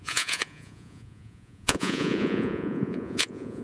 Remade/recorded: remade